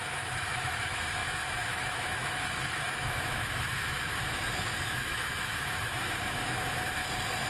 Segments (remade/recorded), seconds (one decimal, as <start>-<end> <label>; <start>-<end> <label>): 0.0-7.0 remade; 7.0-7.5 recorded